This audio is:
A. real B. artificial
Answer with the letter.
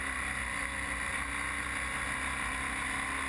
A